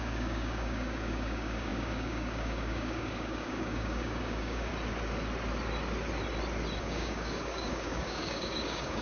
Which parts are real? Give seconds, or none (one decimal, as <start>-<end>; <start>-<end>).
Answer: 4.7-6.8